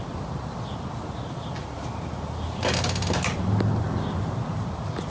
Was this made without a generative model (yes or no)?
yes